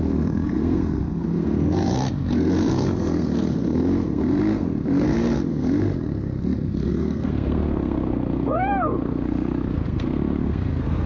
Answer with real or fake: fake